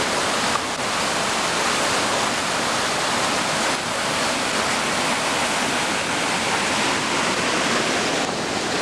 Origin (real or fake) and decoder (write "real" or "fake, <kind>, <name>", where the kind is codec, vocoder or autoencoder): real